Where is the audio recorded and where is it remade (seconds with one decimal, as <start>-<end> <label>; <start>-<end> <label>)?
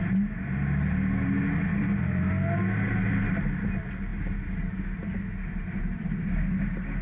0.0-1.7 recorded; 1.7-2.2 remade; 2.2-7.0 recorded